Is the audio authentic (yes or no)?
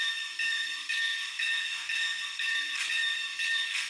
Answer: no